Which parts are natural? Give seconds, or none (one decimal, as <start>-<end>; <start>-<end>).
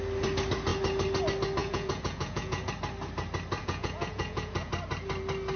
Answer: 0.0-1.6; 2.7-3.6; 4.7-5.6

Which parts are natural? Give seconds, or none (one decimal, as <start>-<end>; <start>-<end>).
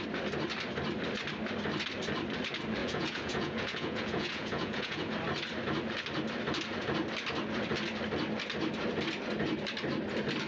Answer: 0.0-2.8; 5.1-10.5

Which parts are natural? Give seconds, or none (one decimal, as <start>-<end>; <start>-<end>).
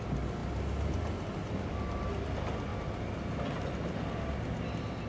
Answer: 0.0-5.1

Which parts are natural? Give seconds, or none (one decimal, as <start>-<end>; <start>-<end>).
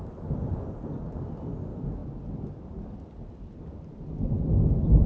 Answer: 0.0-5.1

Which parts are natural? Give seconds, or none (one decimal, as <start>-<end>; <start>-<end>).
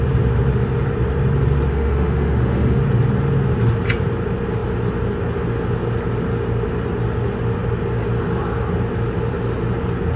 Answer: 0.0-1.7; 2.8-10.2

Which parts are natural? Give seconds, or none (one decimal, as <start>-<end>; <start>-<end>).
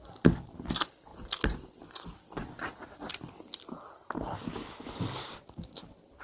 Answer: 0.0-6.2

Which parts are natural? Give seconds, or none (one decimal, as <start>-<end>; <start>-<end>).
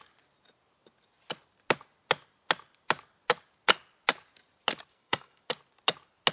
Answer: 0.0-4.9; 5.4-6.3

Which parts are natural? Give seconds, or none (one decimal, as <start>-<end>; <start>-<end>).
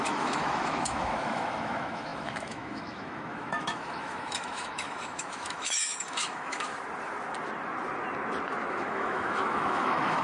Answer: 6.7-8.7